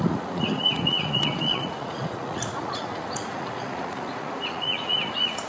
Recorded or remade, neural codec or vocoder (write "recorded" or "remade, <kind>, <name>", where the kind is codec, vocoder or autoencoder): remade, vocoder, Vocos